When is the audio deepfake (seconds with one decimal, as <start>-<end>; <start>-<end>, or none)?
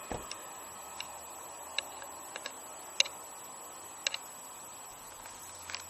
4.9-5.4